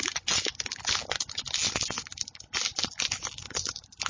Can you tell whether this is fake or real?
real